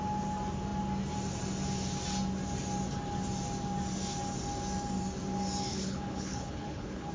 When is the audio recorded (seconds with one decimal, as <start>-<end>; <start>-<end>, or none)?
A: 0.0-5.7